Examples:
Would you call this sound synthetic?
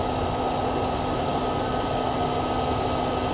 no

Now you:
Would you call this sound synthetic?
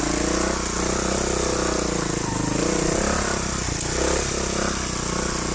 no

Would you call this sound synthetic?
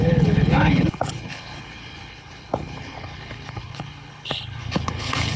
yes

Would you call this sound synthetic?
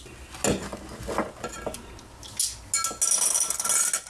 no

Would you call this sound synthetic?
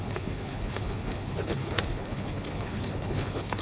yes